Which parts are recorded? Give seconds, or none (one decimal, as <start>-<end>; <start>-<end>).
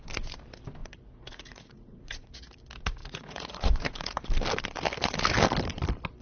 0.0-0.8; 2.3-3.0; 4.2-6.2